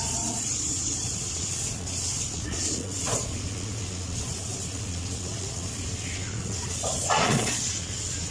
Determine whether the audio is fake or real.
fake